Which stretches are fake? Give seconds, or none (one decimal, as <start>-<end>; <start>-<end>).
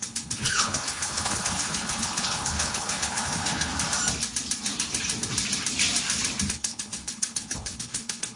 0.0-3.7; 6.5-8.4